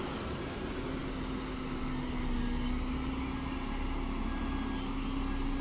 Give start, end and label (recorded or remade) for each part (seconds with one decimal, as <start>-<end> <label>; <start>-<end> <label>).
0.0-5.6 recorded